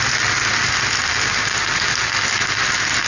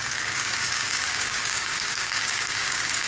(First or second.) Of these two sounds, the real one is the first